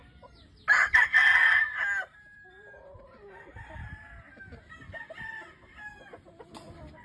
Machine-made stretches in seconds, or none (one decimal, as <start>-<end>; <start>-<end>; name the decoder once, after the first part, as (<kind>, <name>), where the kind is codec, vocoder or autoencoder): 0.0-1.2 (vocoder, BigVGAN v2); 1.8-3.5; 6.0-7.0